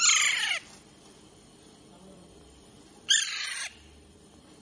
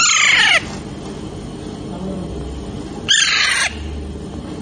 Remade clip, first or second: first